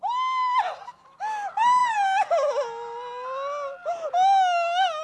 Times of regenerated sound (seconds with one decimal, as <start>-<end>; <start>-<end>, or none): none